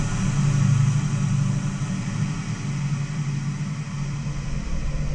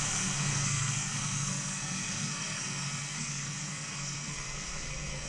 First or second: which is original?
first